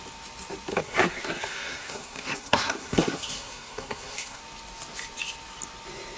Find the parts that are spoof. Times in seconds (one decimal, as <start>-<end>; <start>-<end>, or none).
0.7-4.4